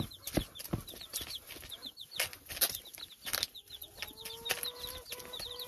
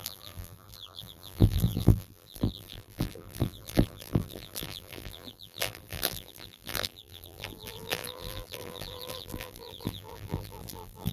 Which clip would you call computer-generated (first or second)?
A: second